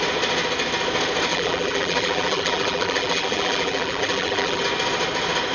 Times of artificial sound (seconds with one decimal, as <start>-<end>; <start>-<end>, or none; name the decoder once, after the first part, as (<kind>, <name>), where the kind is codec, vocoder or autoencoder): 1.3-4.6 (vocoder, BigVGAN v2)